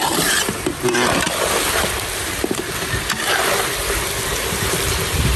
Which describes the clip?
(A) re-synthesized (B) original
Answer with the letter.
B